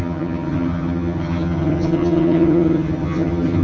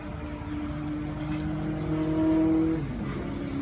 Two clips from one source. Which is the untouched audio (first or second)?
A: second